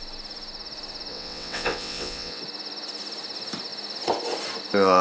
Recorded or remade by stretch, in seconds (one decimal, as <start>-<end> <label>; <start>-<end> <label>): 0.0-1.1 recorded; 1.1-2.4 remade; 2.4-5.0 recorded